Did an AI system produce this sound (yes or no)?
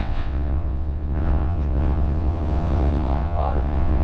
yes